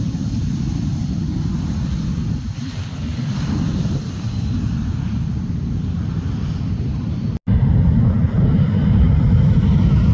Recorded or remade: recorded